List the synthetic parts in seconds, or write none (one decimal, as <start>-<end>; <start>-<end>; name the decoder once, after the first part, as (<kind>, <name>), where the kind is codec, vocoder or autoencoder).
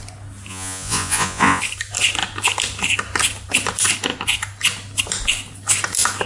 0.5-1.6 (vocoder, Vocos)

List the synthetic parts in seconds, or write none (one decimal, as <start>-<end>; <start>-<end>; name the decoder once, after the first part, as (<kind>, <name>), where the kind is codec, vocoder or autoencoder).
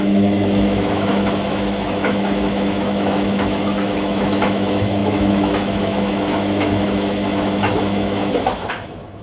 0.0-9.2 (autoencoder, DAC-VAE)